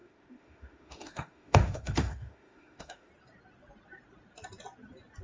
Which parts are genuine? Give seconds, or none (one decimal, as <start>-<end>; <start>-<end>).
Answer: 3.1-5.2